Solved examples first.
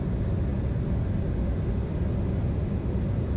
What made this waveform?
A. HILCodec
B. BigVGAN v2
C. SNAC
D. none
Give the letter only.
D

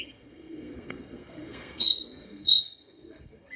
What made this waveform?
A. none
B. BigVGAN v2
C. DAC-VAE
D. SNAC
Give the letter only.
D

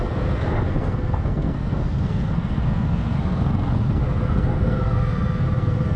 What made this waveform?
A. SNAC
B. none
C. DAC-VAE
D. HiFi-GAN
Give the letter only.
A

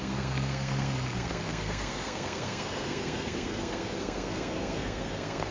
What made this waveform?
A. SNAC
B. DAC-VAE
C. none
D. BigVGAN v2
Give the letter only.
A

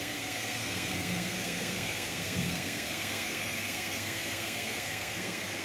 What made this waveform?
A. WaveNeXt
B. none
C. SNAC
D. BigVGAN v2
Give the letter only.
C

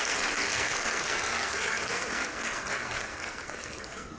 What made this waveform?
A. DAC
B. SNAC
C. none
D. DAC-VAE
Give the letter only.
B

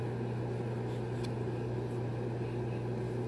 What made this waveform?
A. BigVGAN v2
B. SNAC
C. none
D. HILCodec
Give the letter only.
C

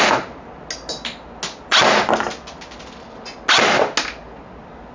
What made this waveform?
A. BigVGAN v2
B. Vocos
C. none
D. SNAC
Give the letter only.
C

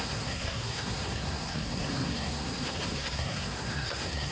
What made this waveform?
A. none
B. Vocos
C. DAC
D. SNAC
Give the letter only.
D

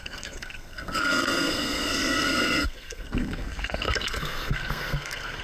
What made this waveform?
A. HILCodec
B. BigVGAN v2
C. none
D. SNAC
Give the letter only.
D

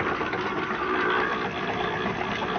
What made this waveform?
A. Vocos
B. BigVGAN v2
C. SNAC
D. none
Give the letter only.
D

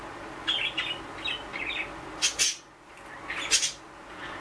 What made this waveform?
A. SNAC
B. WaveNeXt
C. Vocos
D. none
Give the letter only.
D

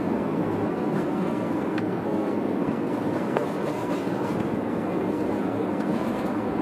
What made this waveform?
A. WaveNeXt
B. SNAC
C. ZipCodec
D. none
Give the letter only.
B